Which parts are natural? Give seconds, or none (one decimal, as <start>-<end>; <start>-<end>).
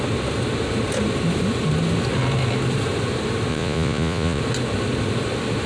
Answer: 0.0-3.5; 4.4-5.7